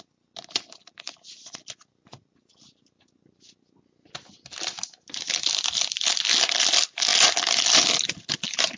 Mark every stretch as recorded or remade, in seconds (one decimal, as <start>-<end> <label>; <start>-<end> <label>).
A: 0.0-8.8 recorded